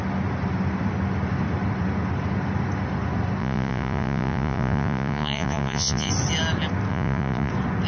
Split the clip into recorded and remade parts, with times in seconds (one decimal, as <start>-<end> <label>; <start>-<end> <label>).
0.0-3.4 recorded; 3.4-6.1 remade; 6.1-6.9 recorded; 6.9-7.5 remade; 7.5-7.9 recorded